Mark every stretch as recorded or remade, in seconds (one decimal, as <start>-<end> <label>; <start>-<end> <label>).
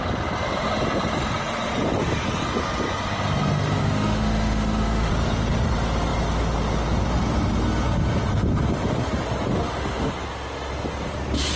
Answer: 0.0-3.8 recorded; 3.8-5.1 remade; 5.1-9.5 recorded; 9.5-10.1 remade; 10.1-11.6 recorded